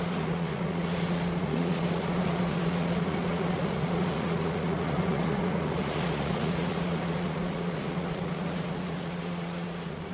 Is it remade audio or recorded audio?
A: remade